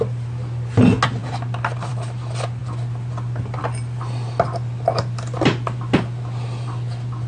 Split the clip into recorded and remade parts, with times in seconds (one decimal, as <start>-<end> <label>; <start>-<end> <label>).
0.0-7.3 recorded